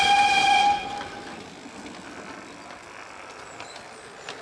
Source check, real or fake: real